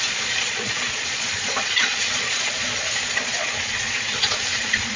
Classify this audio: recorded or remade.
remade